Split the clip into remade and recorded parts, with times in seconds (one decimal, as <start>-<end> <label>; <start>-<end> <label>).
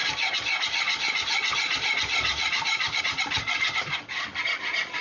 0.0-3.0 remade; 3.0-5.0 recorded